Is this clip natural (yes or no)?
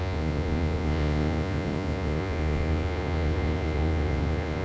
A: no